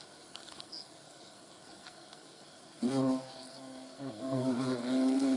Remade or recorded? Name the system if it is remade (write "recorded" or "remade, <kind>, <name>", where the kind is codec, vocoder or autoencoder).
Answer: remade, codec, SNAC